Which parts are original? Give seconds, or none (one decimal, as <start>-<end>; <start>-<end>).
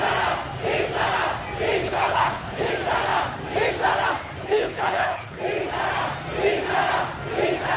0.0-1.8; 2.7-4.4; 5.4-7.8